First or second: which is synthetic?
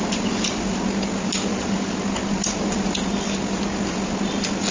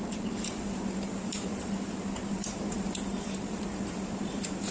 second